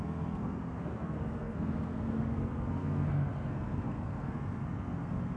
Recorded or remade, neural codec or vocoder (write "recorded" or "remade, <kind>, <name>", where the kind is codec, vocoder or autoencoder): remade, codec, SNAC